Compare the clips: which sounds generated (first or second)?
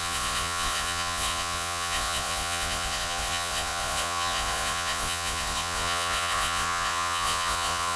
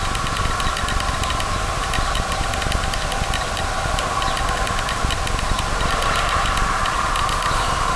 first